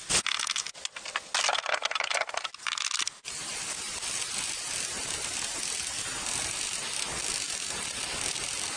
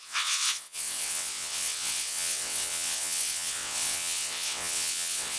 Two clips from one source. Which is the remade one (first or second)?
second